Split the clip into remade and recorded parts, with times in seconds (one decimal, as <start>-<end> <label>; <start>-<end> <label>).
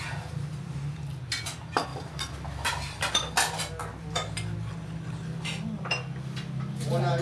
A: 0.0-7.2 recorded